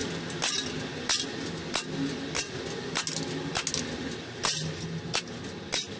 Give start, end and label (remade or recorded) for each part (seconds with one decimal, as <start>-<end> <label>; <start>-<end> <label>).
0.0-6.0 recorded